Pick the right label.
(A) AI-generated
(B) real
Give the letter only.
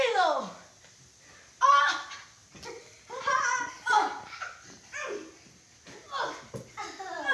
B